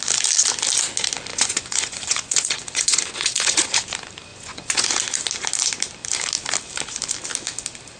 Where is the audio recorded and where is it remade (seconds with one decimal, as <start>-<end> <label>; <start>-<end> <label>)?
0.0-1.3 recorded; 1.3-3.7 remade; 3.7-4.3 recorded; 4.3-4.9 remade; 4.9-8.0 recorded